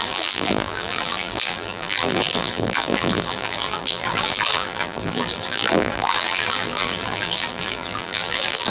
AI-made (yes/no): yes